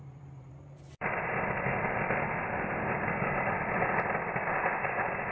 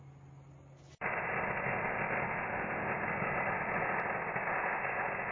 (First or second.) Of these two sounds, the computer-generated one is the first